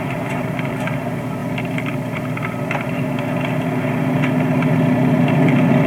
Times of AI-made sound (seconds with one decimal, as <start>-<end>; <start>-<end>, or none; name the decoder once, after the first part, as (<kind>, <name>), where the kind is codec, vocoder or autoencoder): 0.0-1.4 (vocoder, BigVGAN v2); 4.9-5.9